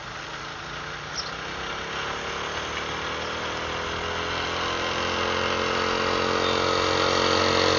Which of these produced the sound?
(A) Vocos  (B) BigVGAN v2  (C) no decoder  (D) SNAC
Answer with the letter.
C